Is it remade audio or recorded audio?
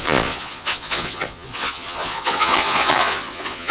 remade